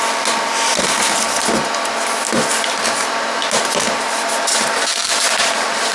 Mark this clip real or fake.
real